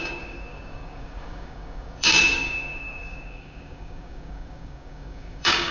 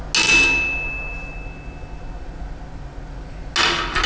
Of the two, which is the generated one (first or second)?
first